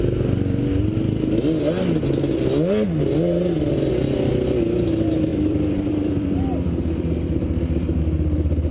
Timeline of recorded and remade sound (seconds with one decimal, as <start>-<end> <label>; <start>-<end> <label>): 0.0-5.3 recorded; 5.3-8.0 remade; 8.0-8.7 recorded